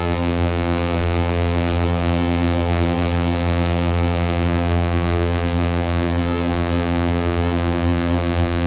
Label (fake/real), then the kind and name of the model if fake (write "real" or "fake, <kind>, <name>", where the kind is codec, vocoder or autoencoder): fake, vocoder, BigVGAN v2